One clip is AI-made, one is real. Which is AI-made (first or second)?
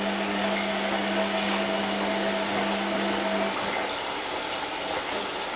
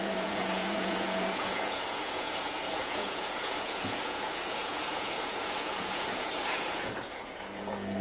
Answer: second